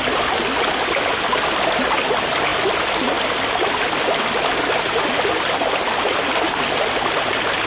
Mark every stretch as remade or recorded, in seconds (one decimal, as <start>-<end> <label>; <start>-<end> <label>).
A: 0.0-7.7 recorded